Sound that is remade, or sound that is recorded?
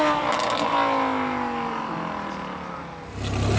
recorded